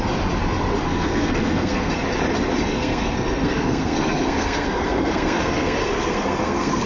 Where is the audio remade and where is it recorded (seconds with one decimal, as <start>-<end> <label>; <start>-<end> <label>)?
0.0-0.8 recorded; 0.8-1.9 remade; 1.9-2.7 recorded; 2.7-6.9 remade